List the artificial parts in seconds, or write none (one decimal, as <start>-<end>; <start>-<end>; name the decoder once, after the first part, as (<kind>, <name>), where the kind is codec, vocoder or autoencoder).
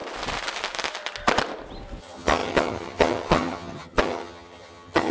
2.0-5.1 (vocoder, HiFi-GAN)